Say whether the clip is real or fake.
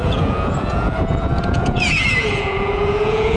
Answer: fake